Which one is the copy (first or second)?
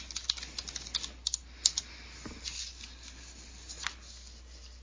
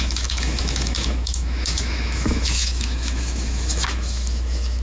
second